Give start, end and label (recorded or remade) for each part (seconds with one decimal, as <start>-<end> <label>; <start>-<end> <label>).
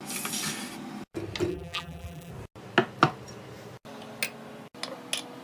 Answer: 0.0-1.5 recorded; 1.5-2.3 remade; 2.3-5.4 recorded